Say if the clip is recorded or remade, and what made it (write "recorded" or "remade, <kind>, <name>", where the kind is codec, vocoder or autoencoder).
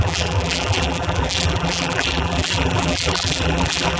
remade, vocoder, BigVGAN v2